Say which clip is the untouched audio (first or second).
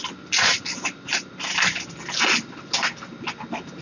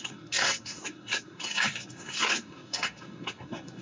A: first